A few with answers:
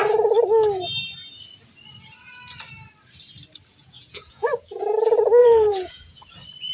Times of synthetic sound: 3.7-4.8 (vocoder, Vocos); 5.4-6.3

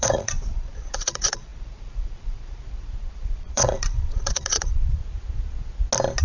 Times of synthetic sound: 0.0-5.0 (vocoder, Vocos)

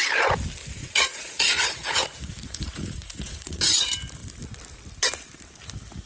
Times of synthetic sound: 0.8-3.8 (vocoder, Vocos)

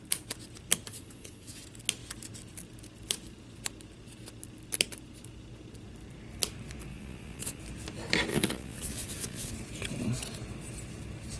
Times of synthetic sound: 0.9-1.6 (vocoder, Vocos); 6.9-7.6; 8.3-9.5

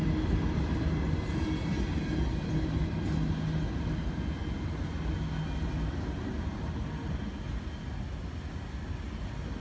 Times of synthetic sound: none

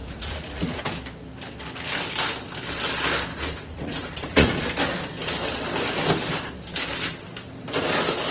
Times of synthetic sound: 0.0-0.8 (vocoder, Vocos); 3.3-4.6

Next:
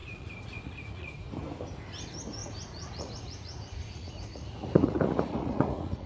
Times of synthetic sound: 0.0-1.3 (vocoder, Vocos); 2.4-6.1